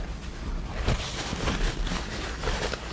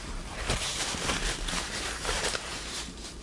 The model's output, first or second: second